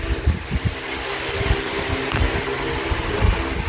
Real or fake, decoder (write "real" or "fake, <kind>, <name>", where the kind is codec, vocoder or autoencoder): real